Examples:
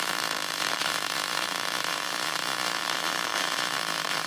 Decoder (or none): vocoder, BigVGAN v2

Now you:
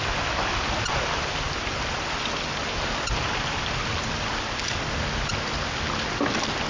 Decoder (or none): none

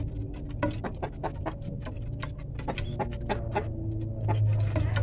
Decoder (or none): none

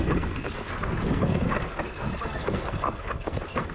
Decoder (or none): codec, SNAC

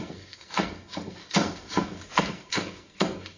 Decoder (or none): codec, SNAC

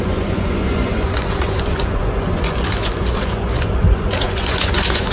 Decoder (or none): vocoder, Vocos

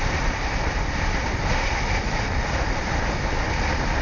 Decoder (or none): none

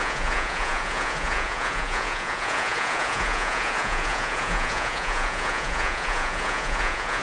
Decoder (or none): vocoder, Vocos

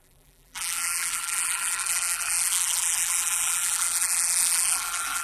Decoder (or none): vocoder, BigVGAN v2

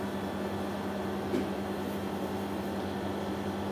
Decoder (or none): none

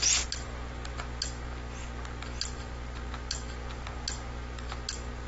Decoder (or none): none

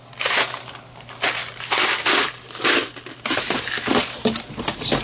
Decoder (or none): none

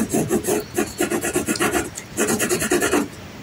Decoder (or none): none